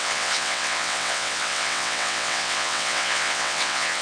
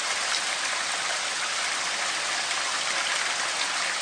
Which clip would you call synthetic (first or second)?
first